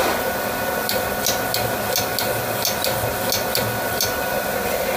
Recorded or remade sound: recorded